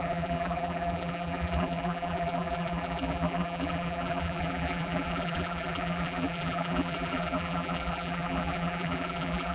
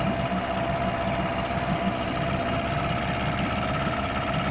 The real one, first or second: second